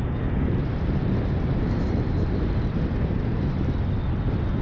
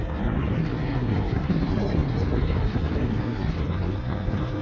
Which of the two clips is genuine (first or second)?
first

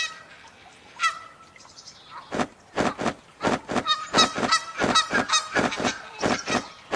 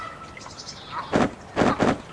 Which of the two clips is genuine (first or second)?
second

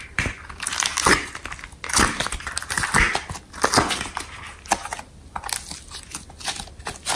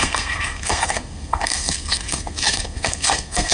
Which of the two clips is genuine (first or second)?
first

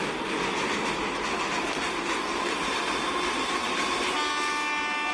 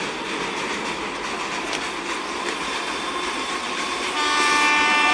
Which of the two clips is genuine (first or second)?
first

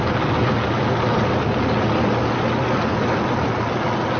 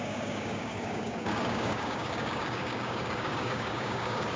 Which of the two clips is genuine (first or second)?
first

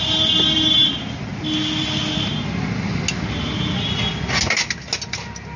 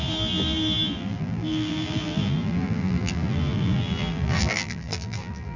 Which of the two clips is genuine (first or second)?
first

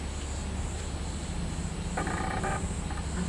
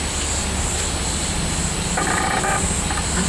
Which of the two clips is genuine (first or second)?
first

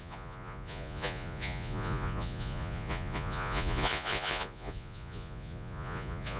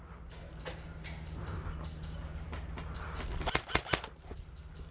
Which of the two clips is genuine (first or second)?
second